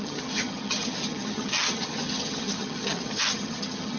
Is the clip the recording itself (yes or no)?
no